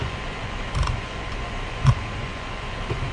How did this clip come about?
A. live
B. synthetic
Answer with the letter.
B